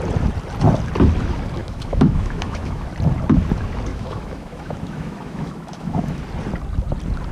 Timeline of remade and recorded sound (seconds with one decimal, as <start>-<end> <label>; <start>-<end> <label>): 0.0-1.6 recorded; 1.6-2.9 remade; 2.9-3.9 recorded; 3.9-6.2 remade; 6.2-7.3 recorded